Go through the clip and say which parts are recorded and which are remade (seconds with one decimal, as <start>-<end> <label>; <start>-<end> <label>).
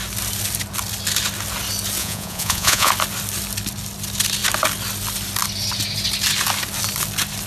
0.0-2.0 recorded; 2.0-2.9 remade; 2.9-7.5 recorded